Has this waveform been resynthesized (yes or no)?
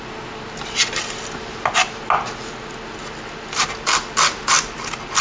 no